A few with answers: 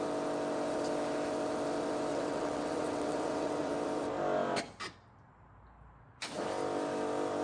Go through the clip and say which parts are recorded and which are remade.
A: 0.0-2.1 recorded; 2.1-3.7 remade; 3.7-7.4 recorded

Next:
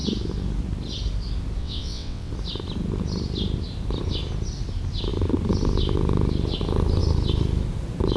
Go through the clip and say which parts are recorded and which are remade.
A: 0.0-1.6 recorded; 1.6-2.3 remade; 2.3-8.2 recorded

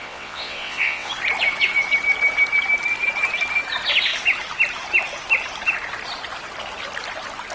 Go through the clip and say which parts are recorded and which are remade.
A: 0.0-1.1 remade; 1.1-7.5 recorded

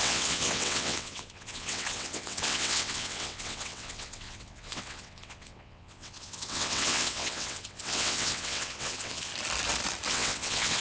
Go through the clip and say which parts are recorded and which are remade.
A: 0.0-9.3 remade; 9.3-10.1 recorded; 10.1-10.8 remade

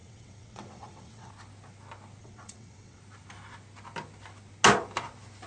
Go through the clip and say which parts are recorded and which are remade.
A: 0.0-1.3 remade; 1.3-2.2 recorded; 2.2-3.0 remade; 3.0-5.5 recorded

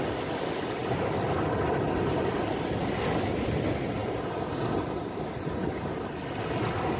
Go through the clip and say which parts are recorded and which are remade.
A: 0.0-7.0 recorded

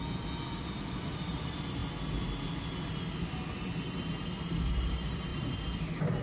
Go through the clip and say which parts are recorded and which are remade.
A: 0.0-6.2 recorded